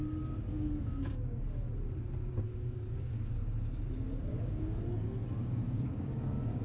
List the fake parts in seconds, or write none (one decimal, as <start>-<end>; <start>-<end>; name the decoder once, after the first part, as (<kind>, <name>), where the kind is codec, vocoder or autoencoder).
0.5-1.4 (codec, DAC); 2.5-3.3; 4.3-4.8; 5.4-6.6